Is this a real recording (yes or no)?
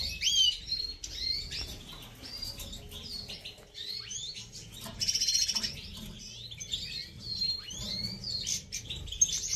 yes